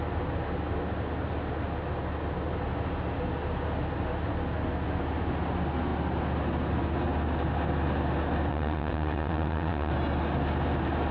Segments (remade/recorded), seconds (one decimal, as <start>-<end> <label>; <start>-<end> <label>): 0.0-8.5 recorded; 8.5-9.9 remade; 9.9-11.1 recorded